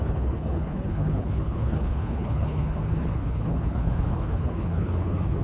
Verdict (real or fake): fake